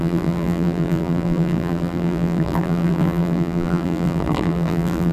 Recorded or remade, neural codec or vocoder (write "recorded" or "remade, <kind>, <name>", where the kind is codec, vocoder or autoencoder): remade, vocoder, BigVGAN v2